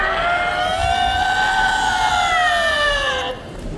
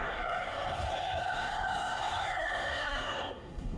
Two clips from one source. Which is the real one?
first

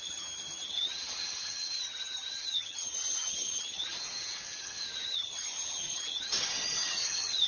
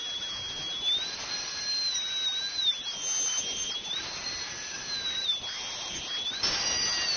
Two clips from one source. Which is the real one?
second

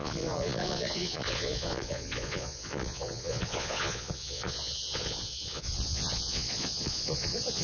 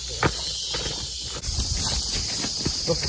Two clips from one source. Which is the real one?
second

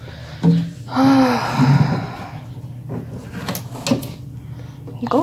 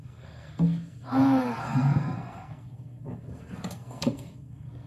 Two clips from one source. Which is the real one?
first